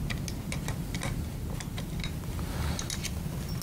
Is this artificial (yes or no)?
no